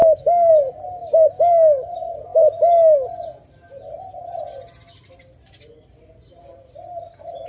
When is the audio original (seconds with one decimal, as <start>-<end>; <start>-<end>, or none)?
0.5-7.5